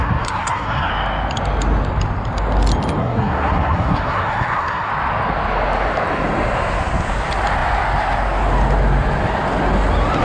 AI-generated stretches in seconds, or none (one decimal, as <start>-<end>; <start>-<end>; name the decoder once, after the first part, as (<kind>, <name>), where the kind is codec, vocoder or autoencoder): 0.0-0.9 (codec, SNAC); 3.0-4.9